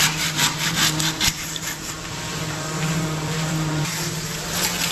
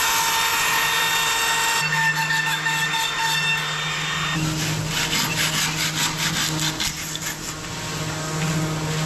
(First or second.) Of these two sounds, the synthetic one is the first